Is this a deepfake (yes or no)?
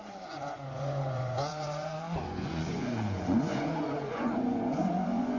yes